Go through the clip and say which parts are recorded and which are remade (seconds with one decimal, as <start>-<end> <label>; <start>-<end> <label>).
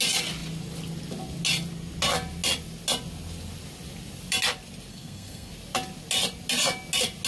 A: 0.0-4.9 recorded; 4.9-5.5 remade; 5.5-7.3 recorded